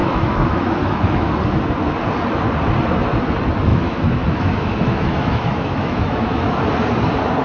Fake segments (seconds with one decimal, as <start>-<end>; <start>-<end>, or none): 0.0-1.3; 3.7-6.6